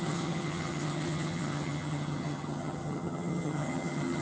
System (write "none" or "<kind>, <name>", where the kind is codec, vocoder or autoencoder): vocoder, HiFi-GAN